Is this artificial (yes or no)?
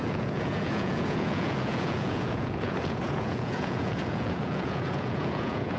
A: yes